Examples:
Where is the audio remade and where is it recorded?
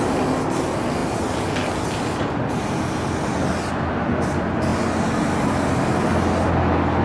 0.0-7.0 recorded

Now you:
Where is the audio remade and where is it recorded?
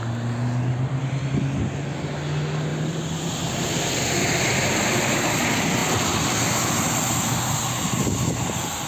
0.0-2.7 recorded; 2.7-3.3 remade; 3.3-8.9 recorded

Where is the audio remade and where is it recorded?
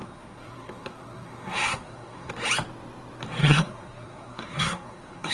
0.0-2.3 remade; 2.3-3.4 recorded; 3.4-5.3 remade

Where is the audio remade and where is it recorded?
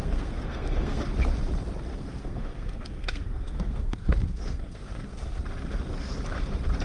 0.0-1.0 remade; 1.0-1.9 recorded; 1.9-5.4 remade; 5.4-6.8 recorded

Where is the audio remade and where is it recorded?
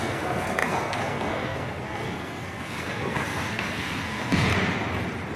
0.0-4.5 remade; 4.5-5.4 recorded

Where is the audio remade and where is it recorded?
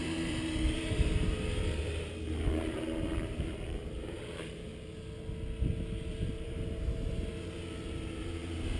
0.0-4.7 remade; 4.7-6.1 recorded; 6.1-8.8 remade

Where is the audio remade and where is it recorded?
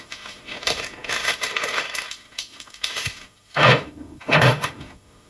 0.0-5.3 remade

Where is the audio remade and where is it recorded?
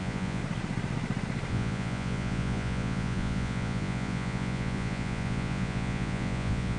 0.0-0.4 remade; 0.4-1.5 recorded; 1.5-6.8 remade